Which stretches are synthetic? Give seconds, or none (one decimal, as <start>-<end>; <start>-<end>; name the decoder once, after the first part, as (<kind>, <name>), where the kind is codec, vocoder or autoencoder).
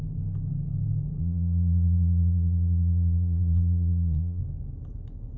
1.2-4.4 (vocoder, Vocos)